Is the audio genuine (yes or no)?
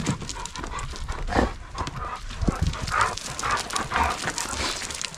yes